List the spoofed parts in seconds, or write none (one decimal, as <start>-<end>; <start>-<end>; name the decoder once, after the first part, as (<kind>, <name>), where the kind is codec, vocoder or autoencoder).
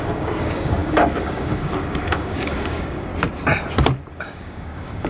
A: 0.0-3.1 (codec, DAC); 4.1-5.1